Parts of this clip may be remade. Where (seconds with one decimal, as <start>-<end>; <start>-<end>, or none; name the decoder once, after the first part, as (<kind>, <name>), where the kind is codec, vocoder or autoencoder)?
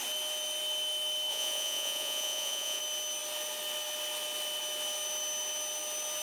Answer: 1.3-2.8 (vocoder, Vocos)